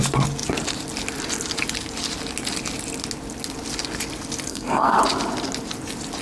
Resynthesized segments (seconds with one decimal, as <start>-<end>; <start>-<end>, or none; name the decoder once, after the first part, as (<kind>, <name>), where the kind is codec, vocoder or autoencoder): 4.5-5.0 (codec, SNAC)

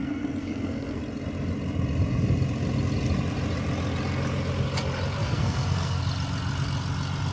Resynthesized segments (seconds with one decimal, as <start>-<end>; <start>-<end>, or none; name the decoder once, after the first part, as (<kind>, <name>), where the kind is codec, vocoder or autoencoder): 0.0-1.0 (codec, SNAC); 5.2-6.0

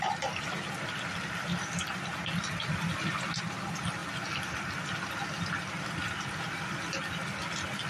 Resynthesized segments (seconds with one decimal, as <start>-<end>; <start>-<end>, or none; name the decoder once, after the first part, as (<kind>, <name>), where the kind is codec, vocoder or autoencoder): none

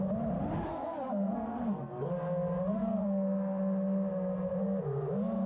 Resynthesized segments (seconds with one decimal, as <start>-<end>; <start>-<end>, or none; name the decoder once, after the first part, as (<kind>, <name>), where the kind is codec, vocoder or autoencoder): 0.7-2.1 (codec, SNAC); 2.7-3.6

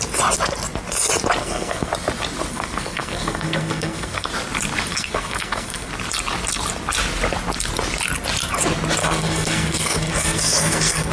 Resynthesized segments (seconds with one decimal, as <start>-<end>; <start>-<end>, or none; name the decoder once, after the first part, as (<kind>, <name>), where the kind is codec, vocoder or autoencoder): 1.4-1.9 (codec, SNAC); 2.5-4.3; 4.9-5.9; 9.0-11.1